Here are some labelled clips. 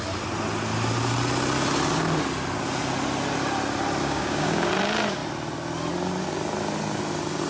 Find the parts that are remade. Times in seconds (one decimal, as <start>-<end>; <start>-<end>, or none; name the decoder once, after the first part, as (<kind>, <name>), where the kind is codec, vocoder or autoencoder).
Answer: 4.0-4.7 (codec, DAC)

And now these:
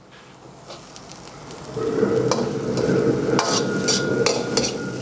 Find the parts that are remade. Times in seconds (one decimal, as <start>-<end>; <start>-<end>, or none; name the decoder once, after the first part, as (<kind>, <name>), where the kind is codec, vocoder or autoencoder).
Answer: none

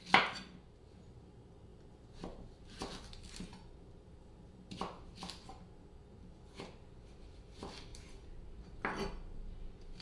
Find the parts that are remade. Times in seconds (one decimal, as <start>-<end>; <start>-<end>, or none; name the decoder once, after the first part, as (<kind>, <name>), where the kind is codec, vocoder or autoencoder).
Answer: none

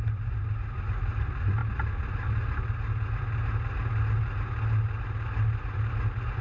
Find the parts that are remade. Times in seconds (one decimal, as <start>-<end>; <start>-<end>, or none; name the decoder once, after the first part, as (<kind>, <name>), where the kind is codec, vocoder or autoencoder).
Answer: none